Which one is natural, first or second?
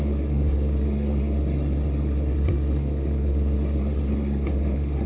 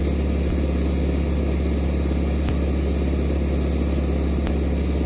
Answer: second